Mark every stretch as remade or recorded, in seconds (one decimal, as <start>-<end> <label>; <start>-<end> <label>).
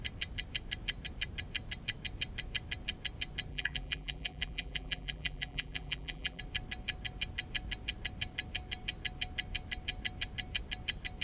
0.0-3.5 recorded; 3.5-6.4 remade; 6.4-11.2 recorded